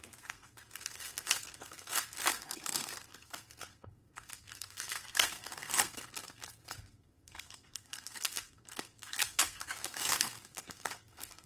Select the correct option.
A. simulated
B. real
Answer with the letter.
A